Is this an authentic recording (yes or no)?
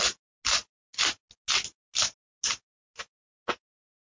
yes